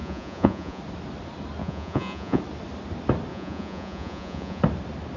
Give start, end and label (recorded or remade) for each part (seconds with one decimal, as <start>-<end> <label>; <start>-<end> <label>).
0.0-0.8 remade; 0.8-1.6 recorded; 1.6-2.4 remade; 2.4-3.3 recorded; 3.3-4.6 remade; 4.6-5.2 recorded